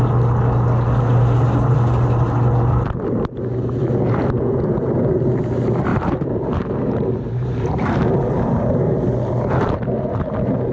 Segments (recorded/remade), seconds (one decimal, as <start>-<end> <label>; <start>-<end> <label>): 0.0-5.9 recorded; 5.9-9.0 remade; 9.0-10.7 recorded